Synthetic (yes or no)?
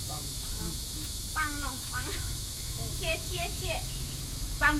yes